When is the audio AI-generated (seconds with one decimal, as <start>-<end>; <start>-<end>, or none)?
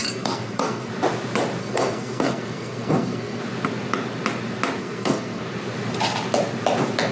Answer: 0.0-0.9; 1.6-3.4; 4.8-5.4